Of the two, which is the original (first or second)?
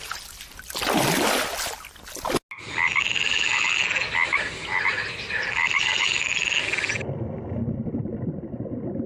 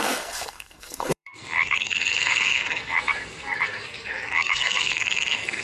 first